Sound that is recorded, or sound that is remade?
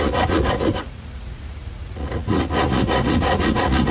remade